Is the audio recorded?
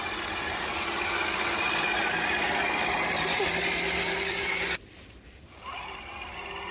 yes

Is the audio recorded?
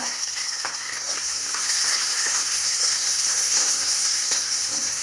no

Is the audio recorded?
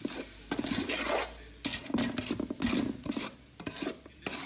yes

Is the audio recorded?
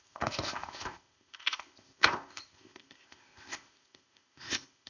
no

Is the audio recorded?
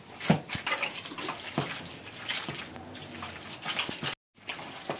yes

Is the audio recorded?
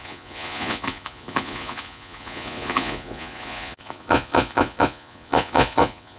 no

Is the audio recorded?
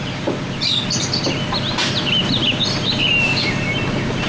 yes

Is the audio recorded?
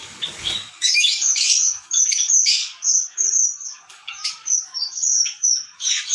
no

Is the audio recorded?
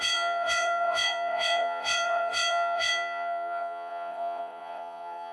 no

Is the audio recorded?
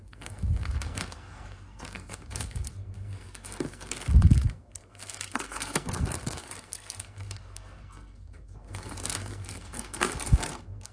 no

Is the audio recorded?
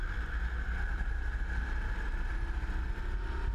yes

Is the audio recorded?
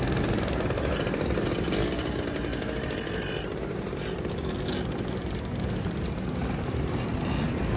yes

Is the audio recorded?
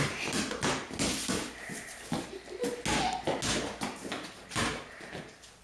yes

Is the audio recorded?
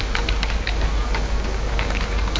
no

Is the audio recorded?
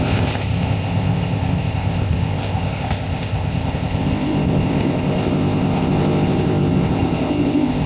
no